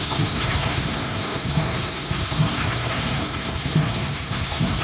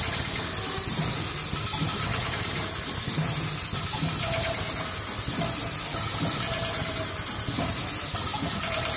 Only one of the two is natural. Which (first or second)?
second